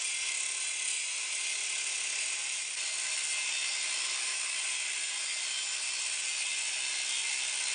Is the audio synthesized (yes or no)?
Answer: no